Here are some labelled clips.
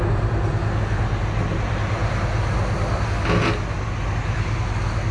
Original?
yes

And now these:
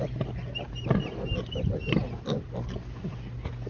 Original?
yes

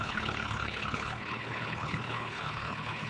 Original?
no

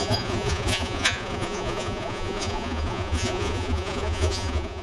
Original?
no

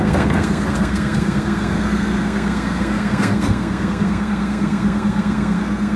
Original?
no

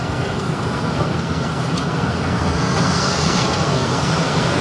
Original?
no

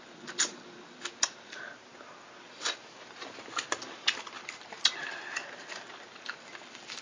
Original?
yes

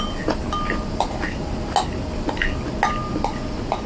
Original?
yes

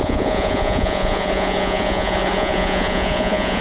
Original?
no